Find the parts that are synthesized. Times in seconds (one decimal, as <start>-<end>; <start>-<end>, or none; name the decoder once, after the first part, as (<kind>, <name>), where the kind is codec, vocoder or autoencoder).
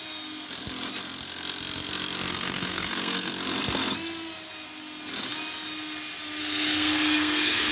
2.3-3.3 (codec, SNAC); 6.4-7.7